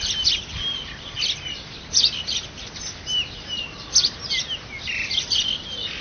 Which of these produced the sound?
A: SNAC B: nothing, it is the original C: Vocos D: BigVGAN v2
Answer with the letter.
B